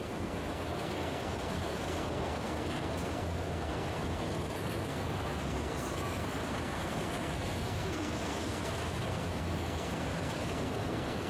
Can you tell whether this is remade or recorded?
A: remade